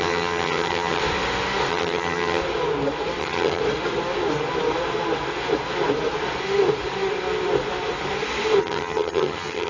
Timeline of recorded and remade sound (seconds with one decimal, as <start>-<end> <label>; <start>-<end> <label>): 0.0-1.0 remade; 1.0-1.7 recorded; 1.7-2.4 remade; 2.4-3.2 recorded; 3.2-3.6 remade; 3.6-8.6 recorded; 8.6-9.7 remade